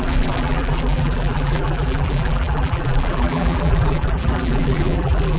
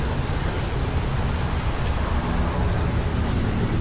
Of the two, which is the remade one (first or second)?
first